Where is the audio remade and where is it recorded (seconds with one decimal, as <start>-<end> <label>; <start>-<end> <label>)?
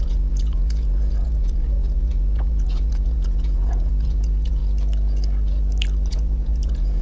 0.0-4.6 remade; 4.6-6.1 recorded; 6.1-7.0 remade